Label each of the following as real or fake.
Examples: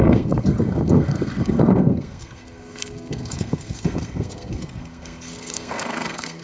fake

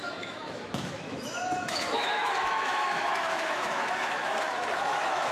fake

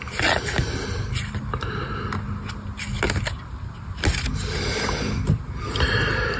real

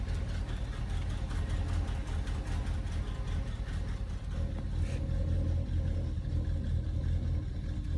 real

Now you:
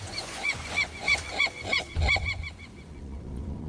fake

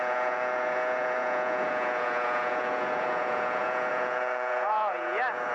fake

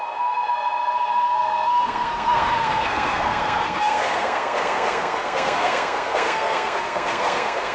fake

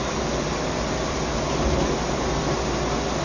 real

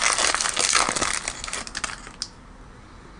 real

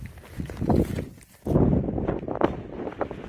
real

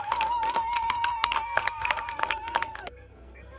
fake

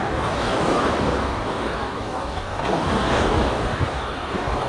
fake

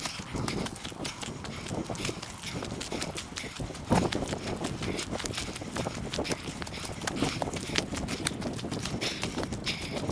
real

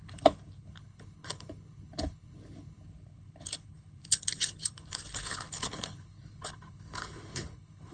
fake